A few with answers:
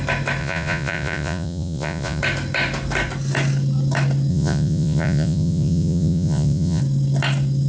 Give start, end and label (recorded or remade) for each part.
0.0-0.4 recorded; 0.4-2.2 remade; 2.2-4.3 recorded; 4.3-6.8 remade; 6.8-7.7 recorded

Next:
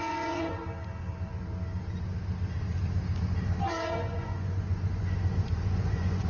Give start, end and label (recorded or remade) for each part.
0.0-0.6 remade; 0.6-3.7 recorded; 3.7-6.3 remade

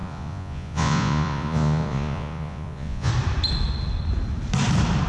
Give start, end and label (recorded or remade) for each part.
0.0-3.1 remade; 3.1-5.1 recorded

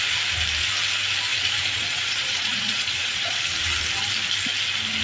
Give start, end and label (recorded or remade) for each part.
0.0-1.3 recorded; 1.3-3.4 remade; 3.4-5.0 recorded